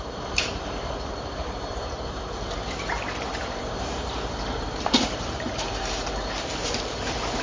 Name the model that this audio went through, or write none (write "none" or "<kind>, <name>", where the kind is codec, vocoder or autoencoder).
vocoder, BigVGAN v2